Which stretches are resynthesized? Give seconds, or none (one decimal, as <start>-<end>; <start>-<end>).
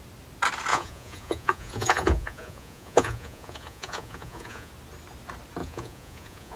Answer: 0.7-4.7; 5.6-6.6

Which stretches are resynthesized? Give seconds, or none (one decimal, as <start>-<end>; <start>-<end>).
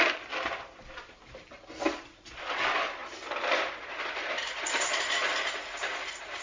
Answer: none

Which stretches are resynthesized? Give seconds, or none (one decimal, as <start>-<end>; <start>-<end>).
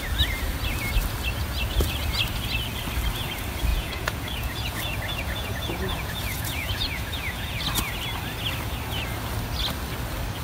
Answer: 3.7-7.6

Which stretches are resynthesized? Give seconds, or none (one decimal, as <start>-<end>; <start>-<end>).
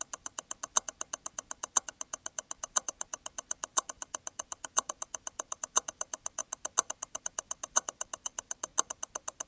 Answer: 0.0-6.4; 7.2-8.7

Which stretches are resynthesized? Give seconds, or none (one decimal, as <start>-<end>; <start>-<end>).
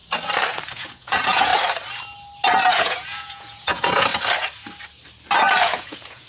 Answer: 0.7-1.5; 2.7-4.1; 5.6-6.3